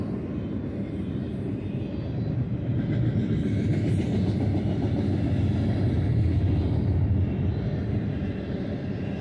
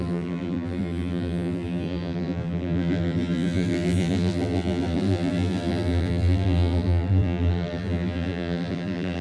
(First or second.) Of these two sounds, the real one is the first